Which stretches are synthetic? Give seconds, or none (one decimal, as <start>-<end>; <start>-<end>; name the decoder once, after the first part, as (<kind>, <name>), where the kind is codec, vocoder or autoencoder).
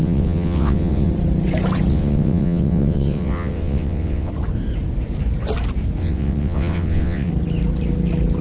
0.0-1.1 (vocoder, WaveNeXt); 1.9-4.3; 6.0-7.3